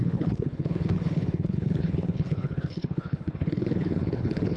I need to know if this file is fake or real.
fake